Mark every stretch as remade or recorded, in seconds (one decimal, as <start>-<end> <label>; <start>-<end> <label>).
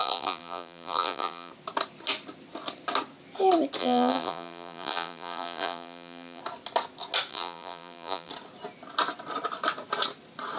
0.0-1.5 remade; 1.5-3.8 recorded; 3.8-6.4 remade; 6.4-7.3 recorded; 7.3-8.3 remade; 8.3-10.6 recorded